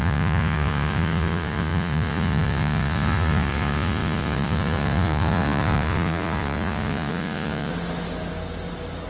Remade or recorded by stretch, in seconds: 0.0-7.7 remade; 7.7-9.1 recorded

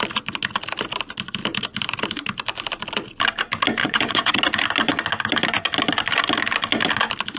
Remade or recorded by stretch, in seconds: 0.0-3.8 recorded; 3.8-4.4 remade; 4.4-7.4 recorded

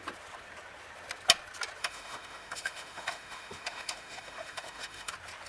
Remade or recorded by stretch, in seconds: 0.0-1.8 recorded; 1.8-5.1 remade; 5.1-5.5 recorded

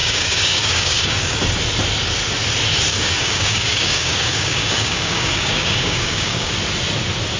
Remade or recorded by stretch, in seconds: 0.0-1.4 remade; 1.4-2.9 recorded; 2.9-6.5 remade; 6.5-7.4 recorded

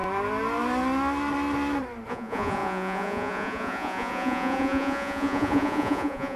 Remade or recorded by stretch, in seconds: 0.0-2.1 recorded; 2.1-6.4 remade

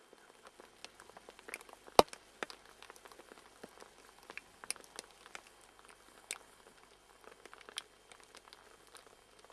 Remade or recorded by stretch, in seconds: 0.0-9.5 recorded